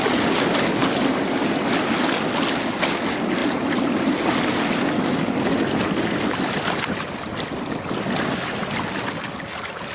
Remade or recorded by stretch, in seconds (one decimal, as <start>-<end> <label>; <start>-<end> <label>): 0.0-9.9 recorded